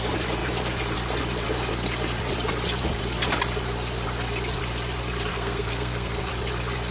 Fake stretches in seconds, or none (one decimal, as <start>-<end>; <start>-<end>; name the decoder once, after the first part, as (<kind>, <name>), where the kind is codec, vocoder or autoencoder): 5.3-6.3 (codec, SNAC)